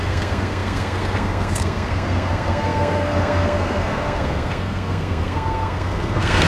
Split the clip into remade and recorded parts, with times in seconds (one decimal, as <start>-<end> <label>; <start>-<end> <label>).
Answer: 0.0-6.5 remade